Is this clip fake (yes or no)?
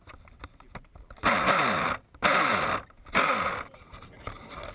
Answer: no